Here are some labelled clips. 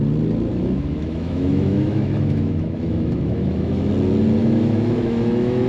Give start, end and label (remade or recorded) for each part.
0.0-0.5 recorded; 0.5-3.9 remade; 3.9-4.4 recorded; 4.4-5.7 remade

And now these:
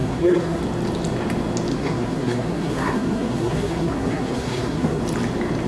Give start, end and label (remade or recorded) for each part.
0.0-0.6 remade; 0.6-1.7 recorded; 1.7-5.0 remade; 5.0-5.7 recorded

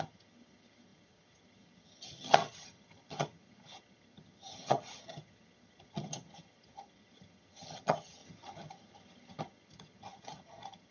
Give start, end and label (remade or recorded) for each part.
0.0-10.9 remade

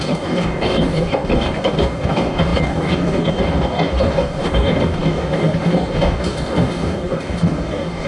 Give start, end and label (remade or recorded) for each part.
0.0-8.1 remade

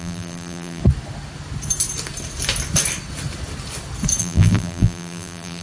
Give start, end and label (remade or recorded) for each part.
0.0-0.8 remade; 0.8-4.2 recorded; 4.2-5.6 remade

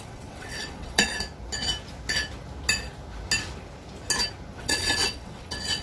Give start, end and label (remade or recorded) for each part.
0.0-1.1 remade; 1.1-4.6 recorded; 4.6-5.8 remade

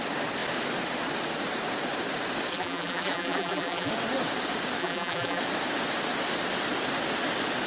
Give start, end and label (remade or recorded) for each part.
0.0-2.5 recorded; 2.5-3.9 remade; 3.9-4.8 recorded; 4.8-5.4 remade; 5.4-7.7 recorded